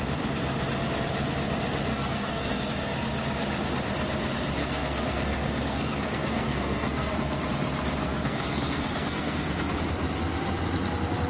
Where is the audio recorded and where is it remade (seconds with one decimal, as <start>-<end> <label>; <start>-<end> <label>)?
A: 0.0-1.9 recorded; 1.9-2.7 remade; 2.7-4.6 recorded; 4.6-7.4 remade; 7.4-8.0 recorded; 8.0-9.7 remade; 9.7-11.3 recorded